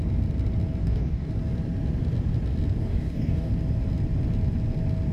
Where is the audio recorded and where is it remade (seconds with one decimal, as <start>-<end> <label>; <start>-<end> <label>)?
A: 0.0-0.8 recorded; 0.8-1.3 remade; 1.3-2.8 recorded; 2.8-3.5 remade; 3.5-5.1 recorded